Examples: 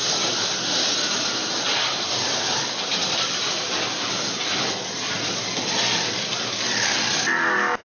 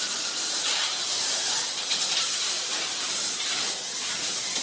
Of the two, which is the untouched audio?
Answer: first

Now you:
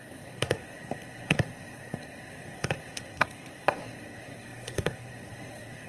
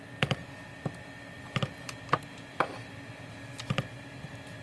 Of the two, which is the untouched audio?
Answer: second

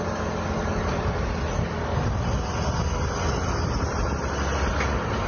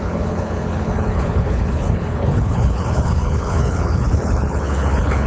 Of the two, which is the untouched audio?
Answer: first